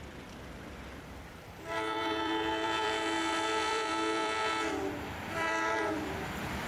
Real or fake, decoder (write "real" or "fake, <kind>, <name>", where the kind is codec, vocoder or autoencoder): fake, vocoder, BigVGAN v2